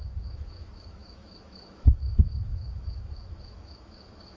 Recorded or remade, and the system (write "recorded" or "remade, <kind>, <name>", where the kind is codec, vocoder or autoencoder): remade, autoencoder, DAC-VAE